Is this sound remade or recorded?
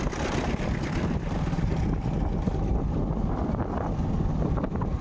recorded